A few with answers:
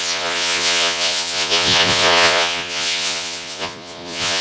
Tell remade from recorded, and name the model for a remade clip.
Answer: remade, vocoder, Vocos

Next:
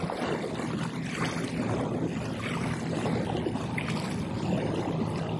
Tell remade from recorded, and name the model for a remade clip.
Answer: recorded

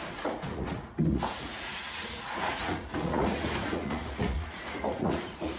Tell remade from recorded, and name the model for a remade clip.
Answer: remade, vocoder, Vocos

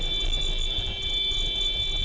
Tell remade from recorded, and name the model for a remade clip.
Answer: recorded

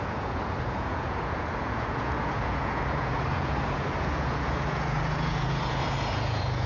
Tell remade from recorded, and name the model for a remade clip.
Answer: remade, vocoder, Vocos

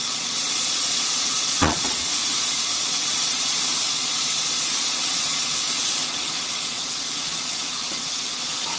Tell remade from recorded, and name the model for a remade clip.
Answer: remade, vocoder, Vocos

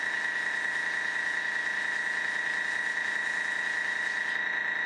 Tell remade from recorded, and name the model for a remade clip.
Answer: recorded